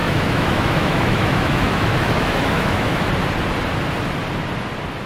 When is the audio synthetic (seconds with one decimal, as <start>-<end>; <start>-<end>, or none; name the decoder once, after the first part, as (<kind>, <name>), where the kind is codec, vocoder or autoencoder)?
0.0-3.1 (autoencoder, DAC-VAE)